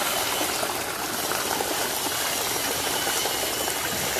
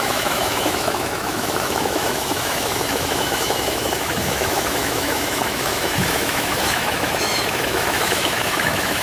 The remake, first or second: second